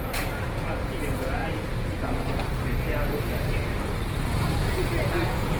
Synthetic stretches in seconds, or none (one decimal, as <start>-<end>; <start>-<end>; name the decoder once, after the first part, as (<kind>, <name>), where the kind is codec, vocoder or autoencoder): 0.0-1.4 (vocoder, Vocos); 4.1-5.6